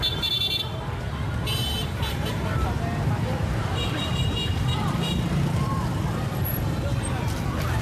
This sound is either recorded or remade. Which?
remade